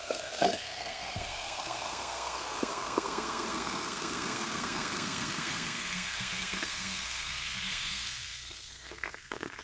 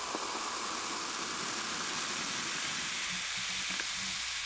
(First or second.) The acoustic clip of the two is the second